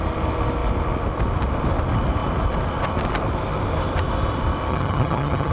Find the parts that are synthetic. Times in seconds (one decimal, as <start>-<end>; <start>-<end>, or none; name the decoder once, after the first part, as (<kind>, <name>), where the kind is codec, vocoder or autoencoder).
4.7-5.5 (vocoder, HiFi-GAN)